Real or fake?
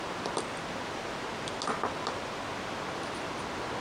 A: real